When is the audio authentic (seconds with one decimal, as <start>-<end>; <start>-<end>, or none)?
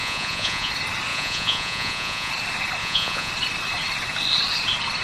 0.7-1.1; 2.3-2.8; 3.3-5.0